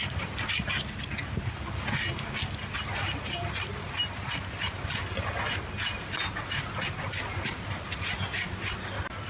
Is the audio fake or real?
real